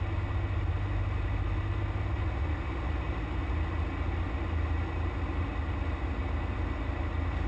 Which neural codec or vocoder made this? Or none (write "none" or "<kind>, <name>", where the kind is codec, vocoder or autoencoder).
none